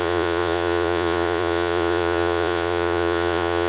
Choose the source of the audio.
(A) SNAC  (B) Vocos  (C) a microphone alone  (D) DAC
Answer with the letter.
B